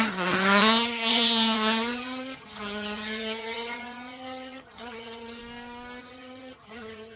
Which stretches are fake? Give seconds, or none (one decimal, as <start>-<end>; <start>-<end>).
0.0-5.4; 6.0-7.2